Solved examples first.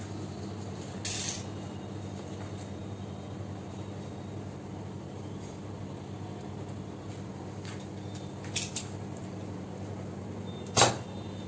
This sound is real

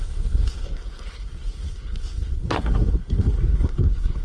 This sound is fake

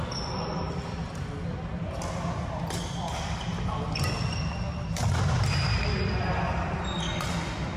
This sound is real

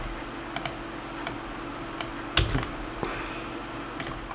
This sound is real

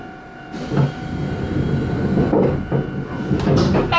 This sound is real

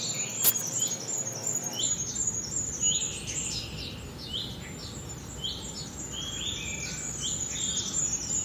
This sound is real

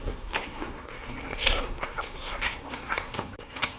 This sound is fake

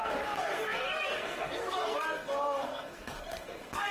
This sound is fake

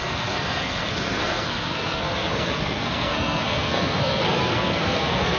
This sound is fake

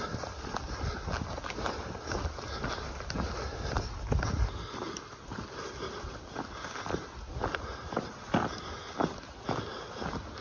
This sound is real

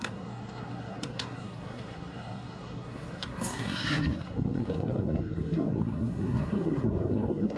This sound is fake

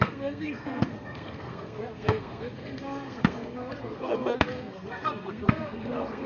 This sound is fake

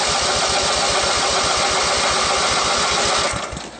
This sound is real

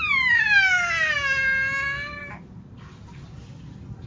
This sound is real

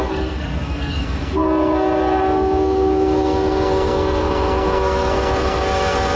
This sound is fake